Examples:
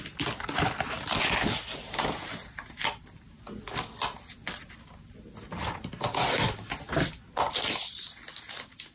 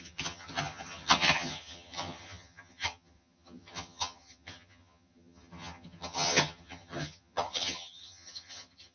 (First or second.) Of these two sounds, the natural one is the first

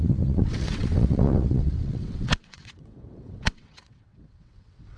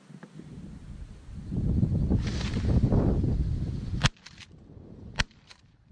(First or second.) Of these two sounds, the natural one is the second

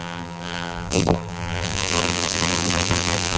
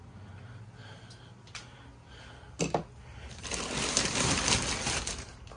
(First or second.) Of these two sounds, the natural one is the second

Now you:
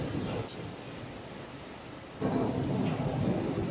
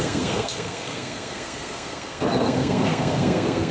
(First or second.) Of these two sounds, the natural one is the first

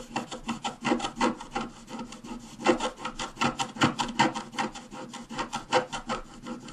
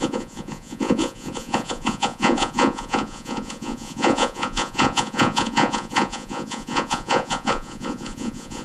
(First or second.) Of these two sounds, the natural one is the first